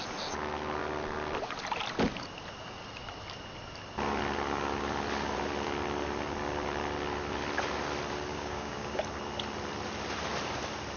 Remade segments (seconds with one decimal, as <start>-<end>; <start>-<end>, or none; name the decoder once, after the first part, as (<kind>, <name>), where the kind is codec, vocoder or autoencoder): 8.3-9.0 (codec, DAC)